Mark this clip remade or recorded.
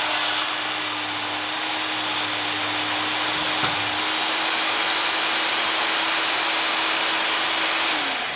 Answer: recorded